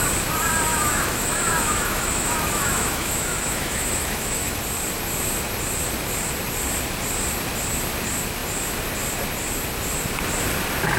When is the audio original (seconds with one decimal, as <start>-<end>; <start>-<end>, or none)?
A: 0.0-0.7; 4.6-11.0

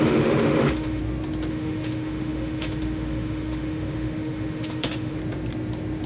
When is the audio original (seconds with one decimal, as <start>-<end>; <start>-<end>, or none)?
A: 1.0-1.5; 5.2-6.1

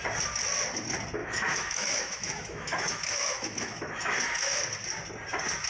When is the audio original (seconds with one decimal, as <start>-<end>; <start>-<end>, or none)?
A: 0.0-1.2; 4.6-5.7

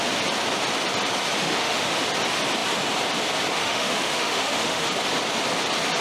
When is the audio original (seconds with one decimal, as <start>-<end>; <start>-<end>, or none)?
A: 0.0-1.4; 2.0-3.6; 4.9-6.0

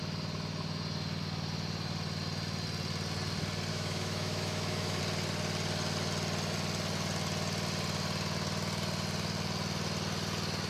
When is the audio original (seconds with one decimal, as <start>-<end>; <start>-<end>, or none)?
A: 0.0-3.7; 5.0-10.7

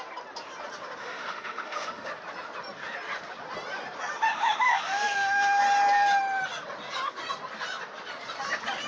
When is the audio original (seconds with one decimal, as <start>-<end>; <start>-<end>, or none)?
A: 0.0-1.0; 2.1-4.3; 5.6-8.9

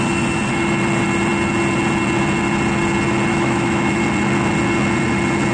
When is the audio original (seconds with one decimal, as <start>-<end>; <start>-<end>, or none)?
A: 0.0-3.3; 4.0-5.5

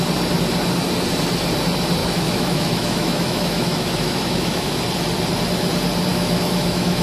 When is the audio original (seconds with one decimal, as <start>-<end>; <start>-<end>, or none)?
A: 0.0-2.0; 4.8-6.1